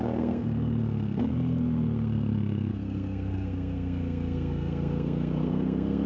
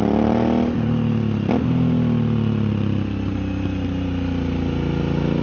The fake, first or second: first